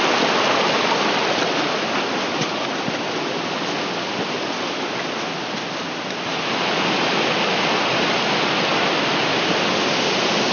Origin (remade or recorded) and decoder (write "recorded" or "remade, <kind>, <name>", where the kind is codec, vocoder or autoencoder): recorded